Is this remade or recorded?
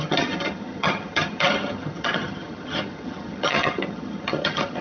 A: remade